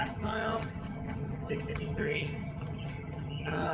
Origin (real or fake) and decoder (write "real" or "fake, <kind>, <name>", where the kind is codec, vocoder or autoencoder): fake, vocoder, HiFi-GAN